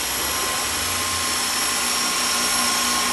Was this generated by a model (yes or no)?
no